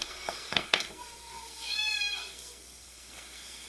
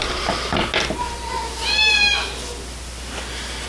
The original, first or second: second